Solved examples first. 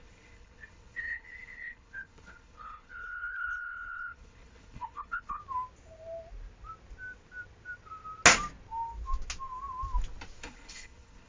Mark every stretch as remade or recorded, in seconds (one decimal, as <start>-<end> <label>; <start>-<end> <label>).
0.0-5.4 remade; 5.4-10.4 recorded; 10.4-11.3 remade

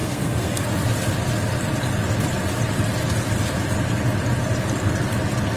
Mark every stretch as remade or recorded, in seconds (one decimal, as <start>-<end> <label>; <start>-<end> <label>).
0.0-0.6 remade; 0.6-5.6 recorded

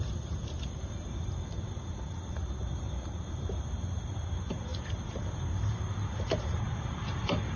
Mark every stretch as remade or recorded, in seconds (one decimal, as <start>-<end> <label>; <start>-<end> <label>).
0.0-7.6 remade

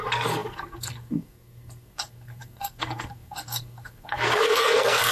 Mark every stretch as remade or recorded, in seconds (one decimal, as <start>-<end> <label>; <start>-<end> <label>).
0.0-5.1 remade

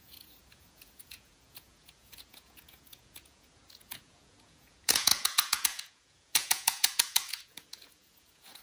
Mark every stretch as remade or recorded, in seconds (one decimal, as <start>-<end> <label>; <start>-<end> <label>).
0.0-8.6 remade

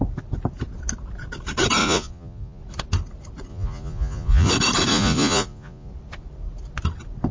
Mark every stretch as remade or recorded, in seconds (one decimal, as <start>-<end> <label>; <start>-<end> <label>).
0.0-1.8 recorded; 1.8-2.6 remade; 2.6-3.5 recorded; 3.5-4.5 remade; 4.5-4.9 recorded; 4.9-5.9 remade; 5.9-7.3 recorded